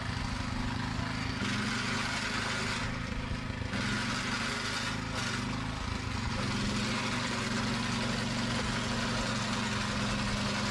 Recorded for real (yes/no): yes